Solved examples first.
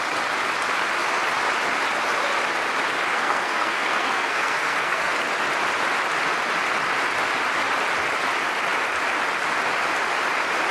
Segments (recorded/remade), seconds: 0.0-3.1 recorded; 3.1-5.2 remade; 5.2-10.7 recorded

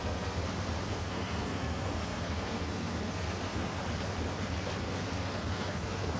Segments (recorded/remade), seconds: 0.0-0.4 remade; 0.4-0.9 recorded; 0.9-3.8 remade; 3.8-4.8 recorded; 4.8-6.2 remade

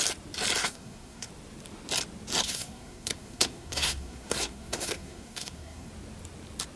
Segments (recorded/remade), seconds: 0.0-0.6 recorded; 0.6-1.3 remade; 1.3-2.4 recorded; 2.4-5.9 remade; 5.9-6.8 recorded

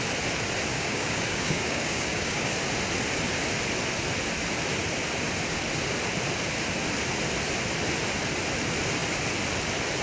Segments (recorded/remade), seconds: 0.0-0.7 recorded; 0.7-2.5 remade; 2.5-10.0 recorded

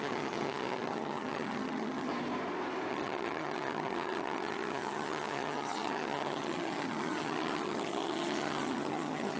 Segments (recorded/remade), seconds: 0.0-2.1 remade; 2.1-2.9 recorded; 2.9-9.4 remade

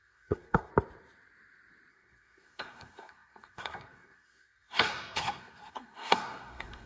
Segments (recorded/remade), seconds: 0.0-0.7 remade; 0.7-1.9 recorded; 1.9-6.9 remade